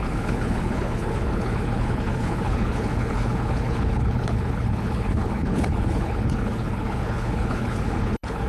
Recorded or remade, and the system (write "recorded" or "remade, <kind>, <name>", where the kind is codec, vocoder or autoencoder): remade, codec, HILCodec